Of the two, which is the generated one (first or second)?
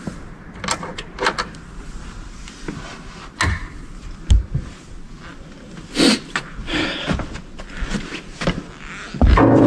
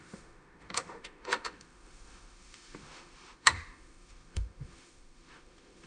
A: second